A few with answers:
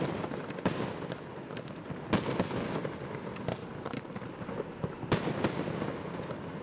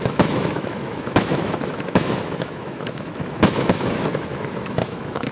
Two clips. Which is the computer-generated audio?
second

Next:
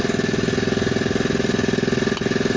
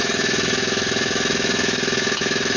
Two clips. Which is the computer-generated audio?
second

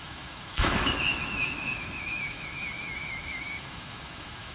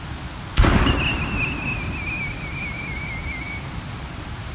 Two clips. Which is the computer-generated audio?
first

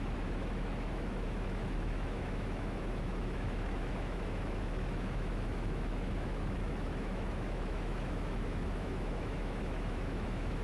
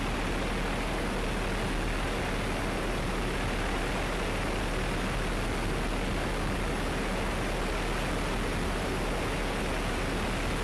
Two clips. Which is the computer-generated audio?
first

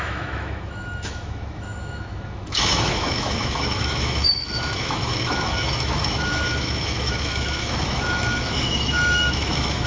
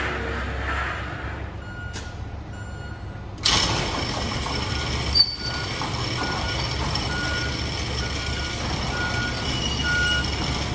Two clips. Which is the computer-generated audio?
first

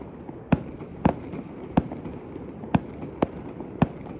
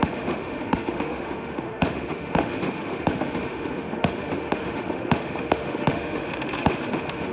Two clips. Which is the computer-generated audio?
second